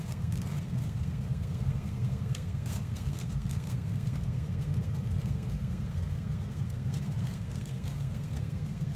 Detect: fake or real fake